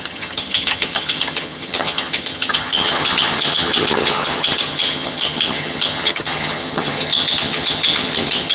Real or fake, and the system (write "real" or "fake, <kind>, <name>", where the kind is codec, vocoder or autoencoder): fake, vocoder, HiFi-GAN